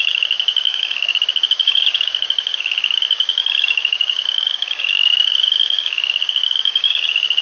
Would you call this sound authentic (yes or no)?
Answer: no